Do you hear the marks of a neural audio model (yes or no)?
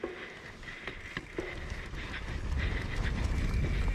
no